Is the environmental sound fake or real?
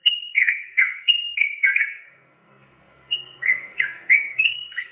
fake